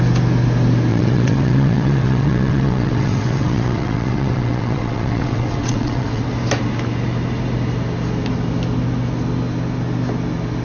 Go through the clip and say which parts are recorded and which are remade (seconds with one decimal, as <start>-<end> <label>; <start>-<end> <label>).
0.0-0.9 recorded; 0.9-6.2 remade; 6.2-10.6 recorded